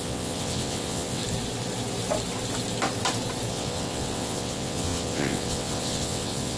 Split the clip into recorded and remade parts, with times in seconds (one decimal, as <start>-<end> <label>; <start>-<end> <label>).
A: 0.0-1.2 remade; 1.2-3.5 recorded; 3.5-6.6 remade